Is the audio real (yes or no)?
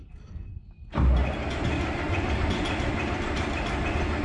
yes